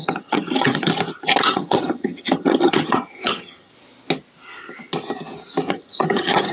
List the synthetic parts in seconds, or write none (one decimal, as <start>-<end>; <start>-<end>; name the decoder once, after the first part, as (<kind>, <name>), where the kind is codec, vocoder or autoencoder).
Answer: 0.0-0.9 (vocoder, HiFi-GAN); 1.4-3.7; 5.7-6.5